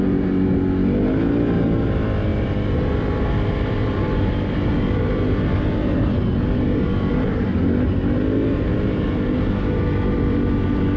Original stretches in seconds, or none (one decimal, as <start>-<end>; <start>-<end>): 0.0-11.0